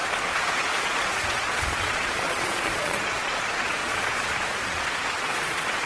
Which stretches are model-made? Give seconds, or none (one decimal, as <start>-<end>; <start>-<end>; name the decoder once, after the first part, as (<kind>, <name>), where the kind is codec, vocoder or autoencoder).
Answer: 0.0-5.9 (vocoder, Vocos)

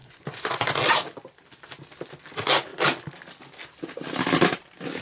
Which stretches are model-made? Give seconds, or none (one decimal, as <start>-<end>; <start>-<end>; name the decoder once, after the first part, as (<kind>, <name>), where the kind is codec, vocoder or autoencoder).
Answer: 0.0-0.8 (vocoder, Vocos)

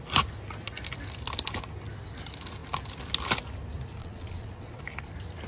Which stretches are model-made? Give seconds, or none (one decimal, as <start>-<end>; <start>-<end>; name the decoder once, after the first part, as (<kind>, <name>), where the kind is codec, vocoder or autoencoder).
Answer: 4.0-4.8 (vocoder, Vocos)

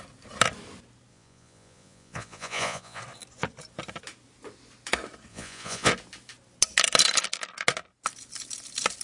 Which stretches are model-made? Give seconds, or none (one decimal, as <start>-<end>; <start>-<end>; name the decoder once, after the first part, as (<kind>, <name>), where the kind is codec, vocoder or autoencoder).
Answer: 1.1-3.0 (vocoder, Vocos); 5.3-5.9